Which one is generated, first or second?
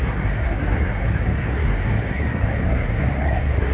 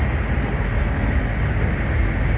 first